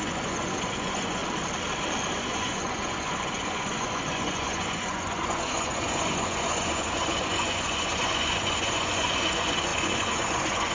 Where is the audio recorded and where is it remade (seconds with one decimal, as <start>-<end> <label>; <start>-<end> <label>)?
0.0-1.2 remade; 1.2-2.1 recorded; 2.1-10.7 remade